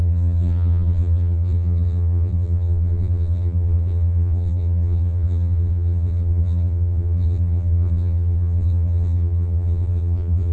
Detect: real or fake fake